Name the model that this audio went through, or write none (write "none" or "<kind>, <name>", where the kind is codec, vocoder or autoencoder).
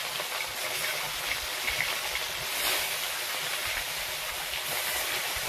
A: none